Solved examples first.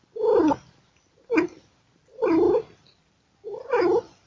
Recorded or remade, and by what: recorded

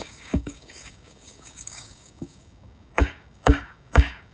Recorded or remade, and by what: remade, codec, DAC